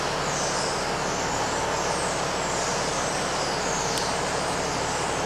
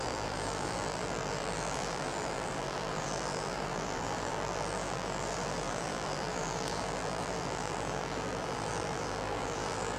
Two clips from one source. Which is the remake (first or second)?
second